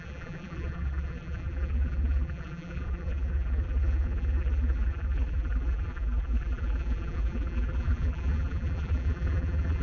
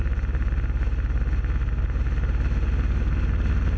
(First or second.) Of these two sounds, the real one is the second